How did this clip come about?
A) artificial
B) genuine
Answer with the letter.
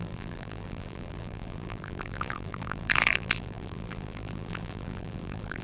A